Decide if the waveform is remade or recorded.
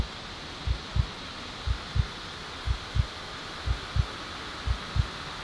recorded